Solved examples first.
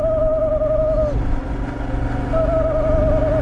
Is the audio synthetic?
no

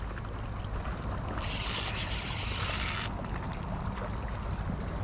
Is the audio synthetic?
no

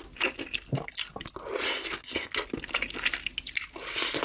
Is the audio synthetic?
no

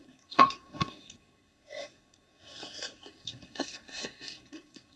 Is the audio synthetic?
yes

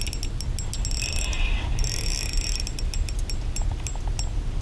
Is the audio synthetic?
no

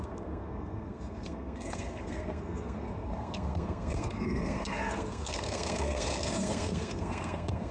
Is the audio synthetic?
yes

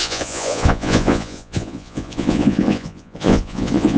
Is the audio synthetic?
yes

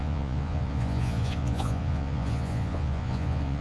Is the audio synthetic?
yes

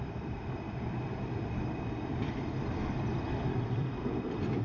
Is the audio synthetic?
yes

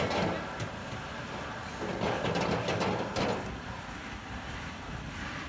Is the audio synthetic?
no